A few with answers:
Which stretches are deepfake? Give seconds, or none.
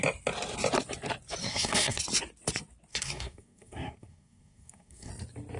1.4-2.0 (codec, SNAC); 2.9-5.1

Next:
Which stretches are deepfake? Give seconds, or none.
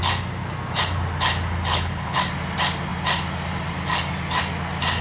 1.7-2.2 (codec, HILCodec)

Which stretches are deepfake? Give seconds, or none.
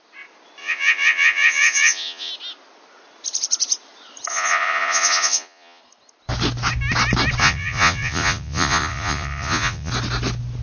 0.6-2.3 (vocoder, Vocos); 4.3-5.8; 7.4-9.9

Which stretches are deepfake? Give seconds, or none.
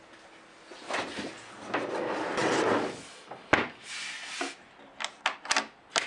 none